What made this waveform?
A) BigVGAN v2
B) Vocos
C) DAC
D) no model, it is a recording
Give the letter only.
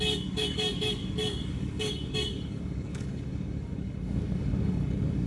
C